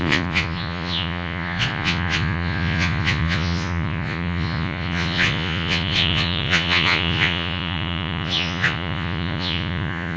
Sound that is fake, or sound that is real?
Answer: fake